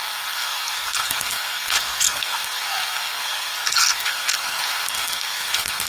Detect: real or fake fake